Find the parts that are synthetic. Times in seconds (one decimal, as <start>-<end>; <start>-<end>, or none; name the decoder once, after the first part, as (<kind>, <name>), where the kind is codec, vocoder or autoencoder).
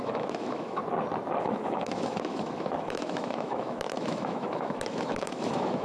0.0-0.8 (autoencoder, DAC-VAE); 1.4-5.8